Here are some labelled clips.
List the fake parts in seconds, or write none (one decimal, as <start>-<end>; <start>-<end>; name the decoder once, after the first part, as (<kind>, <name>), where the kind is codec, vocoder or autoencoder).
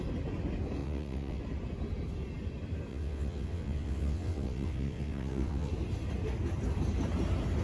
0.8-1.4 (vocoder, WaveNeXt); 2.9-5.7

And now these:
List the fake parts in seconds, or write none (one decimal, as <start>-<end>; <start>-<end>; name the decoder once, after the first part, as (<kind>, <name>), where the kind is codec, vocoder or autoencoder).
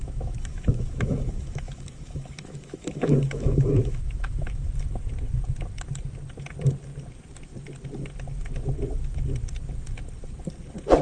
0.0-4.7 (autoencoder, DAC-VAE)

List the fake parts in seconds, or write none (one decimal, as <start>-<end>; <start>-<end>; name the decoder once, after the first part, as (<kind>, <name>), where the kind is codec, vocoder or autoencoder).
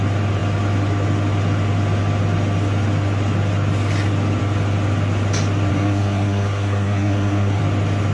5.7-7.6 (codec, SNAC)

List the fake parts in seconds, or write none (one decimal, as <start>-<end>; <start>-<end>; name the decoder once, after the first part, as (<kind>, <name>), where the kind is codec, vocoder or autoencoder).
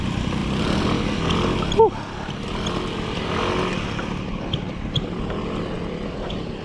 none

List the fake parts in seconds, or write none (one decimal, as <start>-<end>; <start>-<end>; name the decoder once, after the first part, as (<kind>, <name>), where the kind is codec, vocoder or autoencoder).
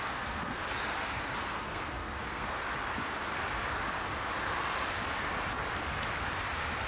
0.0-0.6 (codec, SNAC); 1.4-2.6